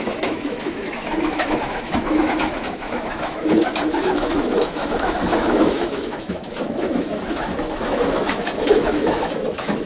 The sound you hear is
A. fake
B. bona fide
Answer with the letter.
A